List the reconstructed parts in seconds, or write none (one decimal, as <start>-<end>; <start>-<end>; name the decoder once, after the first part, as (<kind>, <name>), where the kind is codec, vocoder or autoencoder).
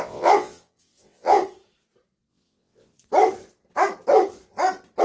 0.0-1.4 (vocoder, WaveNeXt); 2.3-2.9